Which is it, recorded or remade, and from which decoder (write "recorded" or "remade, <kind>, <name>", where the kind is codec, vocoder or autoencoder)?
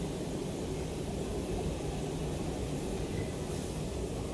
recorded